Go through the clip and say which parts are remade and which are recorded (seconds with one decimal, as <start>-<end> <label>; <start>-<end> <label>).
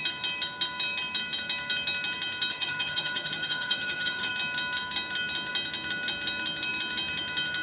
0.0-2.5 recorded; 2.5-4.3 remade; 4.3-7.6 recorded